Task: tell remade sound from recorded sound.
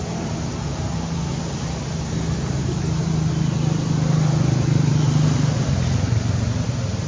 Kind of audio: recorded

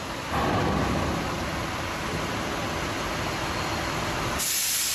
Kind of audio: recorded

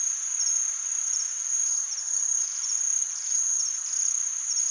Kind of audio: recorded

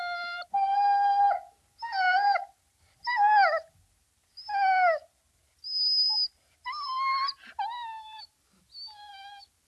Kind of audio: recorded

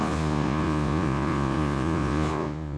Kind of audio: remade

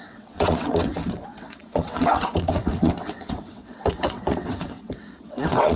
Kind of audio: remade